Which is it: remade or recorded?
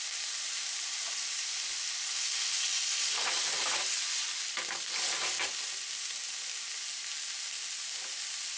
recorded